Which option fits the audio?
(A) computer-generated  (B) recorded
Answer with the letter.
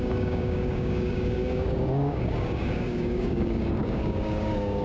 A